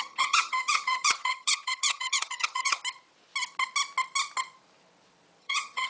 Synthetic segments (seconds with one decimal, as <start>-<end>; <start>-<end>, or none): 0.0-2.8; 5.4-5.9